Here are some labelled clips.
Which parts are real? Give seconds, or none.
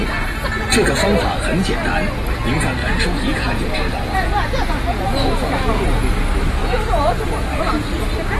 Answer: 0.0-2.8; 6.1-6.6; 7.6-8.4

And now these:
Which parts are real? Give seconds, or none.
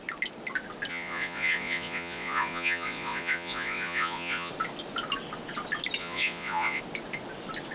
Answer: 0.0-0.9; 4.5-6.0; 6.8-7.7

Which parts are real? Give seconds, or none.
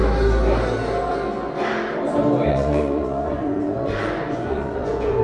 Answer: 0.0-2.5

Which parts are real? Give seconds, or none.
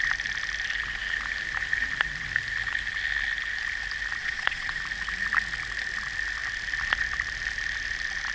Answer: 0.0-4.2; 4.8-8.3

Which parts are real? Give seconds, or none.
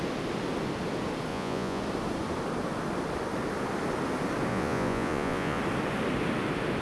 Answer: 0.0-1.3; 1.8-4.5; 5.6-6.8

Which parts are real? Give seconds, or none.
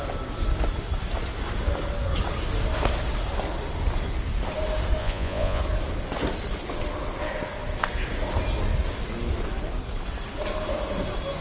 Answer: 0.0-5.0; 5.6-11.4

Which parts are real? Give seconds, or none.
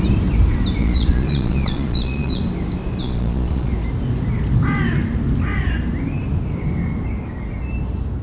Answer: 0.0-0.8; 2.4-3.0; 3.7-8.2